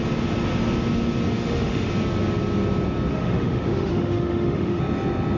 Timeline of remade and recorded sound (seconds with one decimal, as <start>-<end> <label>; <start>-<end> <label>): 0.0-1.3 recorded; 1.3-1.9 remade; 1.9-3.1 recorded; 3.1-4.8 remade; 4.8-5.4 recorded